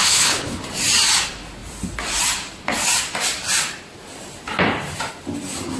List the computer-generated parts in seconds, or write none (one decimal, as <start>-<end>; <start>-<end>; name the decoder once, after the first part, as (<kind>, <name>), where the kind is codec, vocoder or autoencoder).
0.0-0.6 (codec, HILCodec)